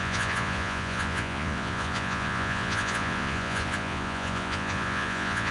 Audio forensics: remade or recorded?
remade